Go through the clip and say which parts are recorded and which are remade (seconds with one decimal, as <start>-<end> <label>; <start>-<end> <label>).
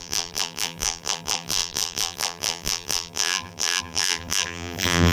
0.0-5.1 remade